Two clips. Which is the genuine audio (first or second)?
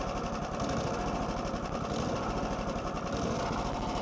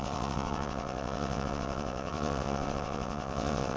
first